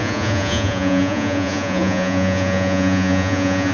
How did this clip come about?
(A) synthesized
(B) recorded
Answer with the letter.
A